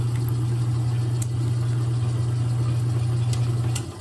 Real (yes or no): yes